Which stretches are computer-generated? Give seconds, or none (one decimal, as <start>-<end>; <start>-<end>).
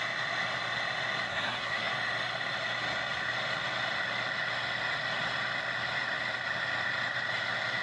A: 1.3-1.9